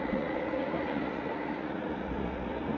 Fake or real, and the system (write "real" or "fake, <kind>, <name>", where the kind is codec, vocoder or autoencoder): fake, vocoder, Vocos